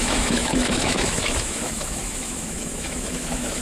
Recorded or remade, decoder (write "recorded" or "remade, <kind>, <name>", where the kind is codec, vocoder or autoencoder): remade, autoencoder, DAC-VAE